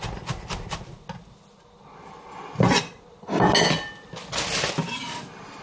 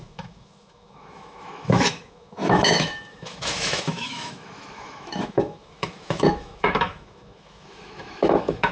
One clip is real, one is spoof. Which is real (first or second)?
first